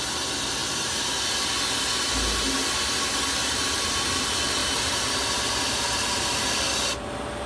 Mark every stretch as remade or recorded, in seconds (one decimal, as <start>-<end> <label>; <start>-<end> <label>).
0.0-3.4 recorded; 3.4-4.1 remade; 4.1-4.6 recorded; 4.6-6.5 remade; 6.5-7.5 recorded